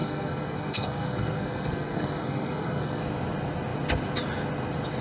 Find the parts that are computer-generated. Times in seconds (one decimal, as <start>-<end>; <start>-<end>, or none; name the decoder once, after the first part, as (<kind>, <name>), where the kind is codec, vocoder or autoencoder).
0.0-3.0 (codec, SNAC)